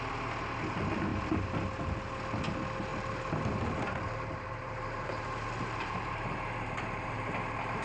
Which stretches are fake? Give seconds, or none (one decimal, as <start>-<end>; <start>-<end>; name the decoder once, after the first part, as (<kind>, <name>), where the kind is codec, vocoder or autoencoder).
2.9-7.3 (vocoder, BigVGAN v2)